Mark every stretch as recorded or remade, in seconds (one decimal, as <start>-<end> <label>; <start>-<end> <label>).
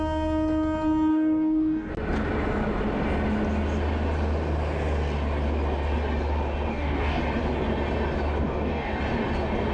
0.0-1.1 recorded; 1.1-1.9 remade; 1.9-6.7 recorded; 6.7-7.2 remade; 7.2-8.4 recorded; 8.4-9.0 remade; 9.0-9.7 recorded